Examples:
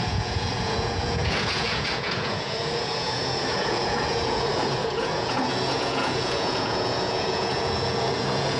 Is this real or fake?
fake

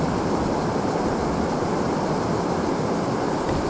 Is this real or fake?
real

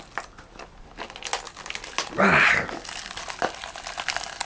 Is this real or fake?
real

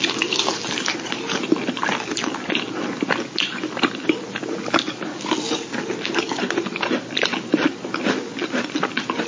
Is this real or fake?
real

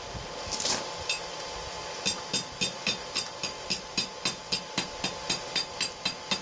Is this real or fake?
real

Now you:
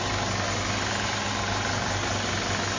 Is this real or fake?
real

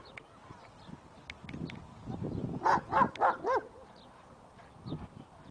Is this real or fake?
real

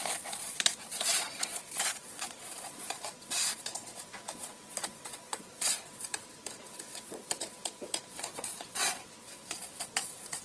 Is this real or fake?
fake